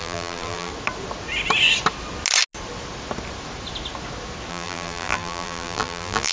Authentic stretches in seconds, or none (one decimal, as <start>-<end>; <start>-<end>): 0.7-4.5